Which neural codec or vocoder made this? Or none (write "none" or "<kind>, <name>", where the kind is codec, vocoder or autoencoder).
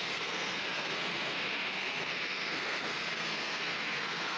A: codec, SNAC